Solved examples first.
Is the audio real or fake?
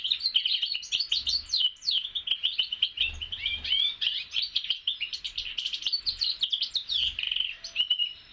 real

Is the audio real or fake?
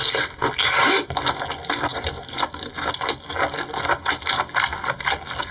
real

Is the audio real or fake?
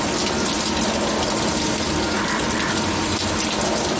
real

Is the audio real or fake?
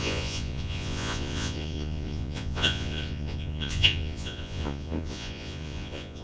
fake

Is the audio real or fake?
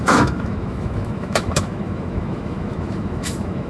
fake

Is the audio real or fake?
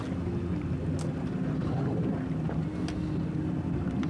real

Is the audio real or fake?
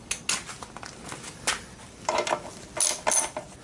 real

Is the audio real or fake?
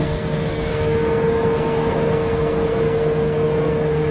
fake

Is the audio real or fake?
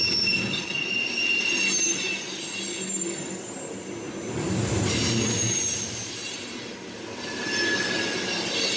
real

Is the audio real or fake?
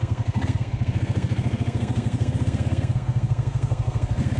fake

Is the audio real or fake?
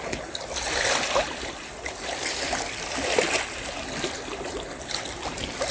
real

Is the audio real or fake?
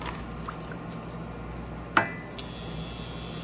real